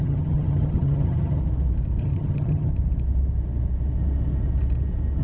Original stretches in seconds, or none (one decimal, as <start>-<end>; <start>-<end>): 1.4-2.0; 2.7-5.2

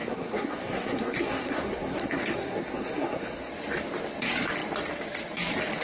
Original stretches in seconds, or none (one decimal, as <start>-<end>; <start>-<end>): 3.5-5.8

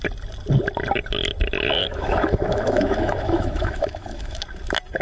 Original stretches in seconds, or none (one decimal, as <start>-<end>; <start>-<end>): 0.0-1.8; 4.4-5.0

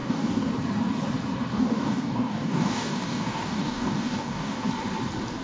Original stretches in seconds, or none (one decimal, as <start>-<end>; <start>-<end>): 0.5-1.5; 4.7-5.4

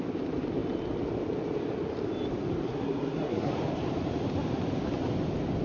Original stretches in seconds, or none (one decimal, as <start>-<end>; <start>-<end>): 0.0-2.6; 3.5-5.6

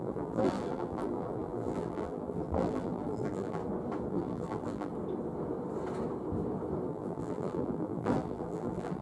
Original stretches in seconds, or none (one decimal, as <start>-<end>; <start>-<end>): 3.6-4.1; 4.9-6.9

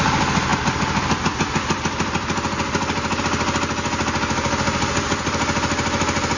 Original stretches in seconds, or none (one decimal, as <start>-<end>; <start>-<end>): 0.0-6.4